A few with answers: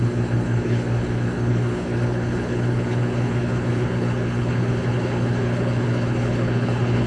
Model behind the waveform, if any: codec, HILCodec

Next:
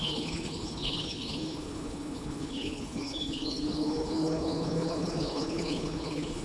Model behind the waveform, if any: codec, HILCodec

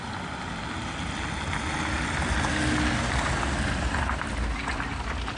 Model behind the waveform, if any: none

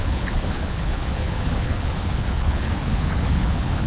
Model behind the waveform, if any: codec, HILCodec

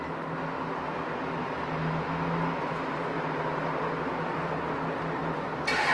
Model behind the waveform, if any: none